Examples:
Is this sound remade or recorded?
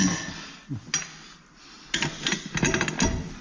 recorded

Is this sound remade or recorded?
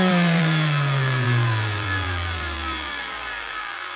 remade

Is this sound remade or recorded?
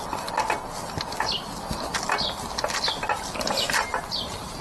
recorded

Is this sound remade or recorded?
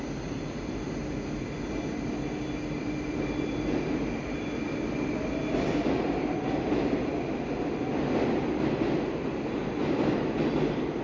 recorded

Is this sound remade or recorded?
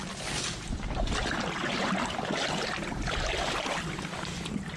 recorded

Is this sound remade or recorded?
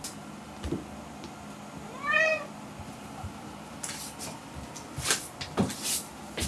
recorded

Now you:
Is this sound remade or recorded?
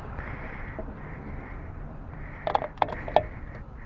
remade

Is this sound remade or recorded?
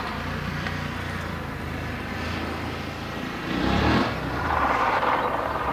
remade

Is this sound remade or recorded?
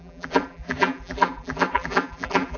remade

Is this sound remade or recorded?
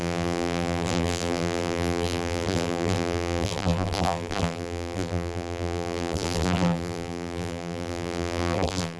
remade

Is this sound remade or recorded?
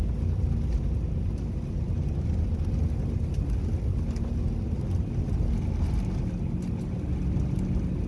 recorded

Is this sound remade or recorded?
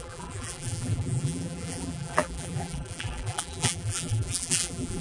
remade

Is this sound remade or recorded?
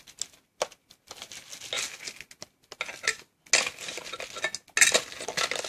recorded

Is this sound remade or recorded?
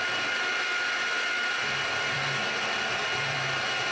remade